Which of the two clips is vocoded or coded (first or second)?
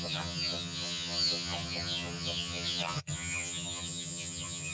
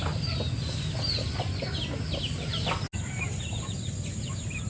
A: first